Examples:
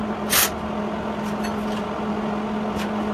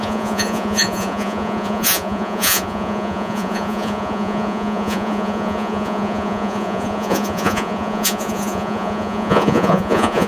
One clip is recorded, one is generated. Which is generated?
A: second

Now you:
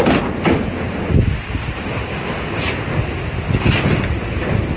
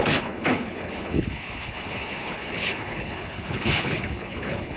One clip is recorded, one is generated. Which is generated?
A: second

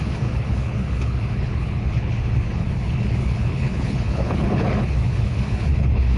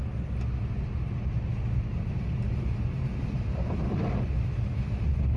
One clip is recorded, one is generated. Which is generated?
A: first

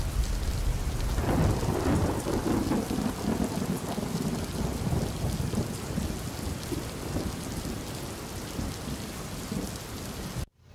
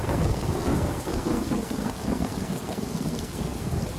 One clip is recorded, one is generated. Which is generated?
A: second